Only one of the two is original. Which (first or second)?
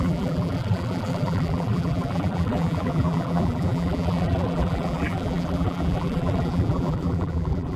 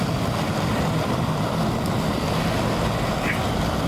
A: second